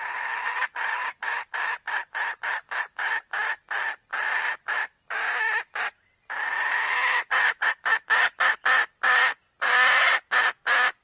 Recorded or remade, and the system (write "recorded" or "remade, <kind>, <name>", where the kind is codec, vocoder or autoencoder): recorded